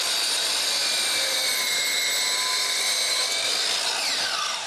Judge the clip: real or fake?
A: real